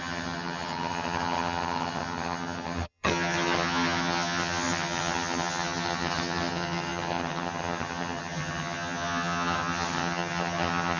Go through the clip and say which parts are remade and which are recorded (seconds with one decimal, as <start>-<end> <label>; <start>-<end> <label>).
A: 0.0-11.0 remade